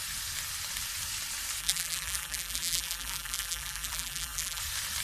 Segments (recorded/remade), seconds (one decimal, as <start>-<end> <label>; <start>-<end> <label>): 0.0-1.6 recorded; 1.6-4.6 remade; 4.6-5.0 recorded

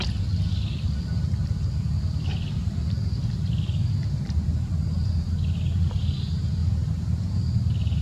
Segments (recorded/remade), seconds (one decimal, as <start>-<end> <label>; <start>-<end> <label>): 0.0-6.6 recorded; 6.6-7.5 remade; 7.5-8.0 recorded